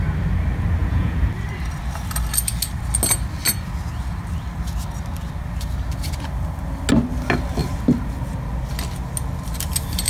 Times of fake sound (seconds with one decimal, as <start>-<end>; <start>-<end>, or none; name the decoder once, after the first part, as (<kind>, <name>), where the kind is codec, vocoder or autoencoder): 0.8-1.3 (vocoder, Vocos)